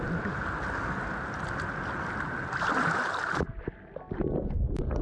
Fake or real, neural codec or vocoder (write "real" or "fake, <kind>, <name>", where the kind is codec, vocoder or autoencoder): real